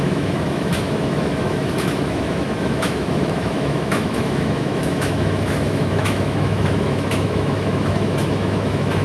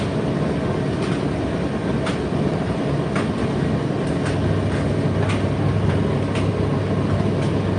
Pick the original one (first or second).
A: second